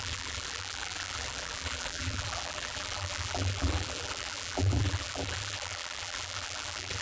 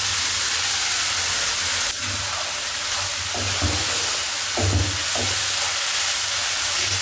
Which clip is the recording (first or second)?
second